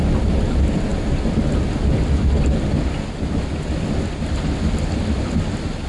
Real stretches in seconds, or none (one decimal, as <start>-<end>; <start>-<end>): 0.0-5.9